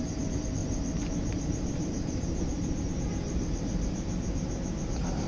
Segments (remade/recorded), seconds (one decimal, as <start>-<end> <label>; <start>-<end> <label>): 0.0-0.6 recorded; 0.6-2.9 remade; 2.9-5.3 recorded